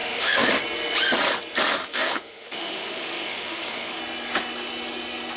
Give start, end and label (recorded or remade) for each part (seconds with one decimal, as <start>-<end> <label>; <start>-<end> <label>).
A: 0.0-0.5 remade; 0.5-1.8 recorded; 1.8-4.0 remade; 4.0-5.4 recorded